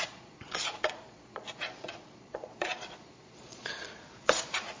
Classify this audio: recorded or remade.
remade